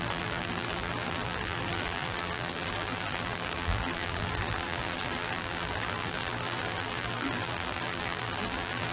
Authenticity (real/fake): fake